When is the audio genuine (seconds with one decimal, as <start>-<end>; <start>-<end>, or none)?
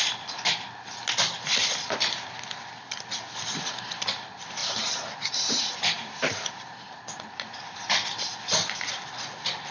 0.0-4.6; 6.9-9.7